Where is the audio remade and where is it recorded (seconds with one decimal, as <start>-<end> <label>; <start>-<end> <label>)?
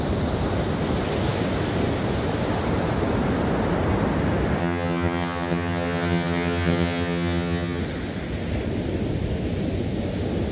0.0-4.6 recorded; 4.6-7.8 remade; 7.8-10.5 recorded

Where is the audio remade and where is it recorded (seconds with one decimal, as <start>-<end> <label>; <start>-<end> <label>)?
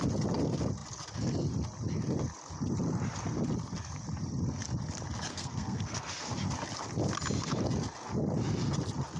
0.0-5.3 recorded; 5.3-6.1 remade; 6.1-9.2 recorded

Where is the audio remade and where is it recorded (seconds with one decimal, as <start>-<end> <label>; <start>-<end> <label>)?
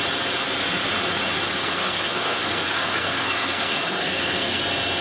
0.0-1.6 recorded; 1.6-4.6 remade; 4.6-5.0 recorded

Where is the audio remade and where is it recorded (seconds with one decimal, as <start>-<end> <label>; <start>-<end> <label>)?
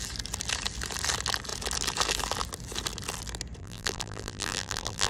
0.0-3.6 recorded; 3.6-5.1 remade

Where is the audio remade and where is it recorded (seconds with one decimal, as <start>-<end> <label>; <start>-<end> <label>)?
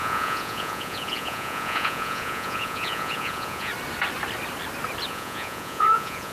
0.0-3.7 remade; 3.7-5.1 recorded; 5.1-6.3 remade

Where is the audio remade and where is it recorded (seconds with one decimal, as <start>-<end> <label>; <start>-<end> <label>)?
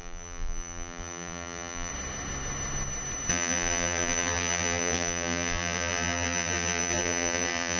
0.0-1.9 remade; 1.9-3.3 recorded; 3.3-7.8 remade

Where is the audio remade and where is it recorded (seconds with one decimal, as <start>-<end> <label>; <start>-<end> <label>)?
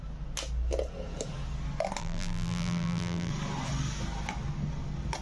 0.0-2.0 recorded; 2.0-3.3 remade; 3.3-5.2 recorded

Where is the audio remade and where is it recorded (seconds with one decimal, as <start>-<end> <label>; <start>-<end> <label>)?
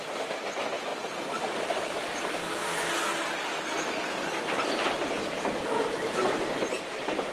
0.0-7.3 recorded